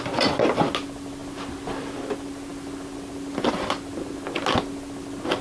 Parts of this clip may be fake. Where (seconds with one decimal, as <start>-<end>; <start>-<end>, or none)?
none